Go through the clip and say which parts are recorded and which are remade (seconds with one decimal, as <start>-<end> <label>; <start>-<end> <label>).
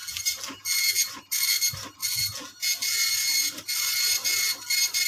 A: 0.0-1.1 remade; 1.1-2.0 recorded; 2.0-3.1 remade; 3.1-5.1 recorded